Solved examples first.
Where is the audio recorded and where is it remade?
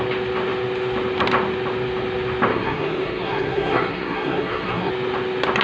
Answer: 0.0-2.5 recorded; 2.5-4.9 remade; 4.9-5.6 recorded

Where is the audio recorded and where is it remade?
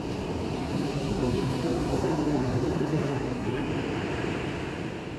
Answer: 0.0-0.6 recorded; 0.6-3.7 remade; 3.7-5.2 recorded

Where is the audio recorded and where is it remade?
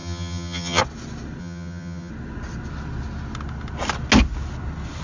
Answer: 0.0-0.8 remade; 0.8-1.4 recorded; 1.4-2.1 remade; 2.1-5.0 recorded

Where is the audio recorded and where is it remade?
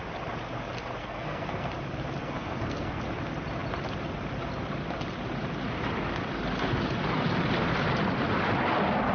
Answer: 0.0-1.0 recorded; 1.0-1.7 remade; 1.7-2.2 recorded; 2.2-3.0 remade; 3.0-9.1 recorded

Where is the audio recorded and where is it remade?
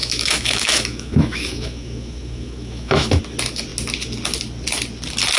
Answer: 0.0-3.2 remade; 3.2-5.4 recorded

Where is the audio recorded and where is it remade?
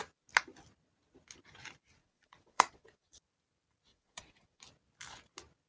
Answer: 0.0-2.0 recorded; 2.0-3.2 remade; 3.2-3.9 recorded; 3.9-4.6 remade; 4.6-5.7 recorded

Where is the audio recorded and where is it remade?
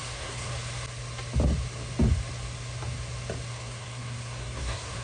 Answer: 0.0-0.5 remade; 0.5-3.5 recorded; 3.5-5.0 remade